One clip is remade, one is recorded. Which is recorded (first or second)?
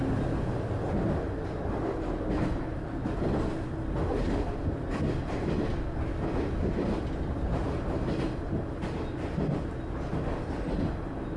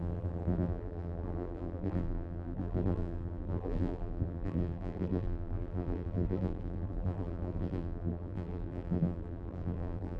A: first